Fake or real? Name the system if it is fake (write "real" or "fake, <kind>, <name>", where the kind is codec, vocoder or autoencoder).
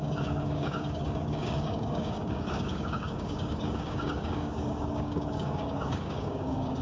fake, codec, DAC